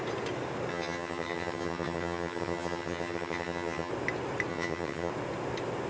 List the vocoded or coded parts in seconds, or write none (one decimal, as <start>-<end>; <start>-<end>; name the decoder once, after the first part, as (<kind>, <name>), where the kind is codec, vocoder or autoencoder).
0.7-3.9 (vocoder, HiFi-GAN); 4.5-5.1